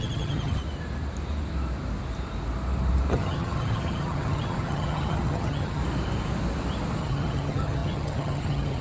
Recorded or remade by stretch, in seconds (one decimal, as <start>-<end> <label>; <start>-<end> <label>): 0.0-0.6 remade; 0.6-3.1 recorded; 3.1-5.8 remade; 5.8-7.0 recorded; 7.0-8.8 remade

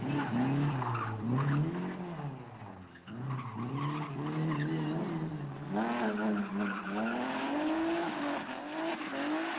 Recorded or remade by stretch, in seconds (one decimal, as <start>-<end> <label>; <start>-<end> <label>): 0.0-6.5 recorded; 6.5-8.6 remade; 8.6-9.6 recorded

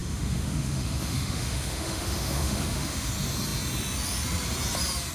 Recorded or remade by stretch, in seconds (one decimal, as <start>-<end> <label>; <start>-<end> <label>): 0.0-3.1 remade; 3.1-5.1 recorded

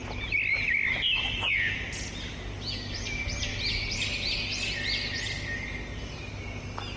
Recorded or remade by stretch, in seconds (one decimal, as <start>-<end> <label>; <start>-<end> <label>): 0.0-7.0 recorded

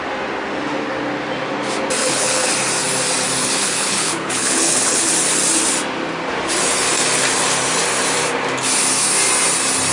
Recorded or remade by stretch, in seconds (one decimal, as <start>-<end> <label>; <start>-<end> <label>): 0.0-2.0 recorded; 2.0-2.5 remade; 2.5-3.4 recorded; 3.4-5.1 remade; 5.1-9.9 recorded

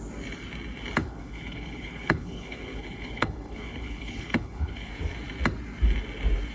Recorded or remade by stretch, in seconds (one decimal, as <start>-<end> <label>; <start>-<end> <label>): 0.0-1.0 recorded; 1.0-4.9 remade; 4.9-6.5 recorded

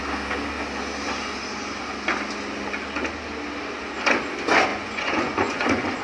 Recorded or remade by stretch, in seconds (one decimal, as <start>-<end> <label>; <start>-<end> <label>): 0.0-4.7 recorded; 4.7-6.0 remade

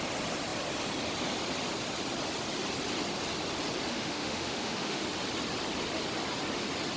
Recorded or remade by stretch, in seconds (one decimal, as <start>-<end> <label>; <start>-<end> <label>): 0.0-3.9 recorded; 3.9-5.0 remade; 5.0-7.0 recorded